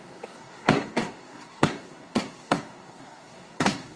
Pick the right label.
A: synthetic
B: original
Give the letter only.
A